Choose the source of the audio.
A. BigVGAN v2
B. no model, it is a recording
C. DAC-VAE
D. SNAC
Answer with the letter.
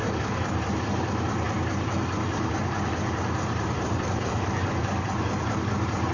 A